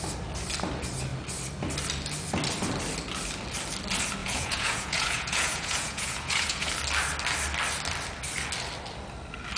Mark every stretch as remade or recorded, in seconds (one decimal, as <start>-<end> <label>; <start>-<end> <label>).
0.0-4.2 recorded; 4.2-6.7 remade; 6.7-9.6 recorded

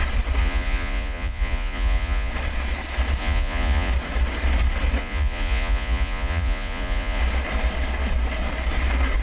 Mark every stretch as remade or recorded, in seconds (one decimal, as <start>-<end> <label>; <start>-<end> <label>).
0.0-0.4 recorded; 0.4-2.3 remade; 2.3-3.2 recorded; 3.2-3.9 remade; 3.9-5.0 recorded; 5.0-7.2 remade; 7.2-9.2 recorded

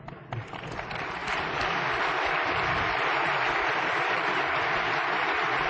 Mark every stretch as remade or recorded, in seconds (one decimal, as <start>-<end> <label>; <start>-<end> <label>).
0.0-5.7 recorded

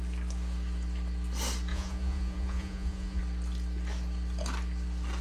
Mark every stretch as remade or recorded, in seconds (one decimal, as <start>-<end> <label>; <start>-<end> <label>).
0.0-1.7 recorded; 1.7-3.2 remade; 3.2-5.2 recorded

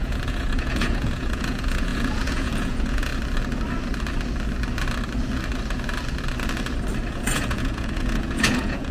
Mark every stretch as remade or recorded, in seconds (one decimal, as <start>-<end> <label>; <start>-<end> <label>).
0.0-3.1 remade; 3.1-7.1 recorded; 7.1-8.9 remade

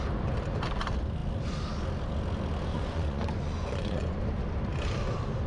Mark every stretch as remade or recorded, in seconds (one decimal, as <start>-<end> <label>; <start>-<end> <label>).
0.0-2.7 recorded; 2.7-4.2 remade; 4.2-5.5 recorded

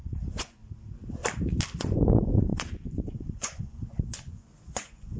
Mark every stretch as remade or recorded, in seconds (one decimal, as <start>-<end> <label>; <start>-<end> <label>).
0.0-0.6 remade; 0.6-1.8 recorded; 1.8-5.2 remade